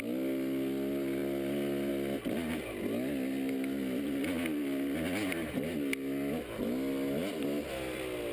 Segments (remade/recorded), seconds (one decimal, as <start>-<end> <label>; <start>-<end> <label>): 0.0-8.3 recorded